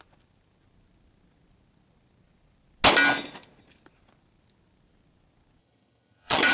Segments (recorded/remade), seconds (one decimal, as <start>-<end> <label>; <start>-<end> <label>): 0.0-5.6 recorded; 5.6-6.5 remade